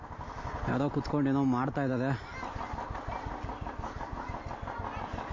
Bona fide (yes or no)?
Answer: yes